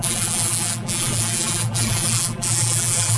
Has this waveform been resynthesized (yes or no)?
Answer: yes